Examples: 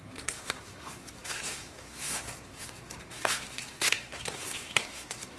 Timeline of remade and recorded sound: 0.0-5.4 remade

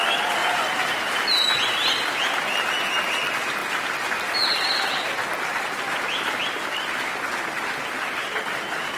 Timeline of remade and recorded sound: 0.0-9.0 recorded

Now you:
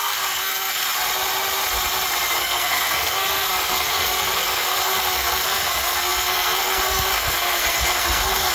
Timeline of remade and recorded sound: 0.0-0.8 remade; 0.8-2.4 recorded; 2.4-8.5 remade